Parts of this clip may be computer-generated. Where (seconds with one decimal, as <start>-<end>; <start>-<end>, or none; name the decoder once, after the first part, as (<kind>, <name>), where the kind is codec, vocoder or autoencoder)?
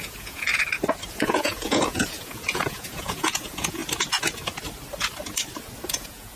0.0-0.5 (vocoder, Vocos); 1.1-3.8; 5.9-6.4